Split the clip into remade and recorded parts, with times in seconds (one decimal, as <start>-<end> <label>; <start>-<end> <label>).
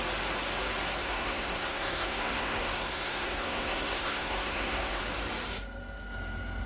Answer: 0.0-1.0 recorded; 1.0-5.0 remade; 5.0-6.7 recorded